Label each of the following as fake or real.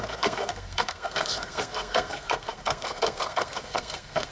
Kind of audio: fake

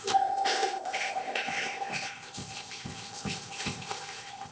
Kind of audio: fake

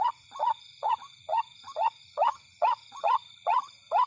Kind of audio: fake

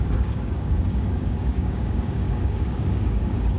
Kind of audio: fake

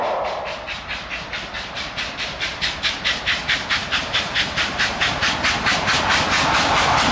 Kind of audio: fake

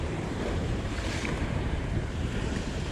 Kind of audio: fake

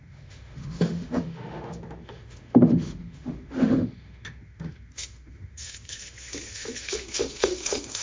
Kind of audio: fake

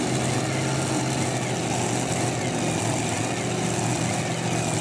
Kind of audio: real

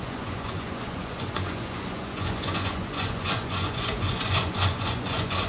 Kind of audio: fake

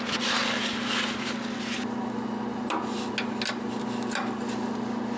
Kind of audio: real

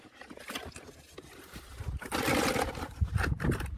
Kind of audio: real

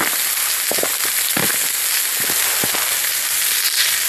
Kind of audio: real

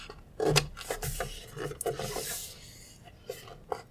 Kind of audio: real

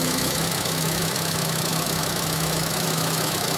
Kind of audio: fake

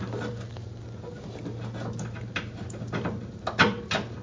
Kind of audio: real